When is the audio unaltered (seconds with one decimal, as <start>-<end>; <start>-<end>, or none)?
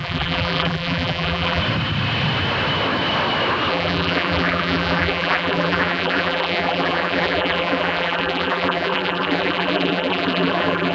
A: 1.6-3.7